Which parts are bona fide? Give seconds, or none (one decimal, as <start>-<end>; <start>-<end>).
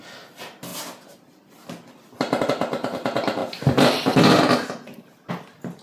0.0-5.8